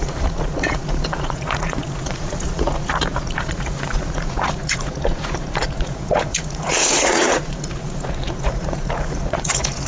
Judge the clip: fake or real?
fake